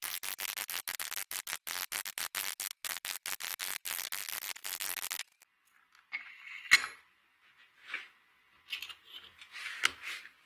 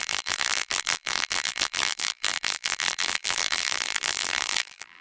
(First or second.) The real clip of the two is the first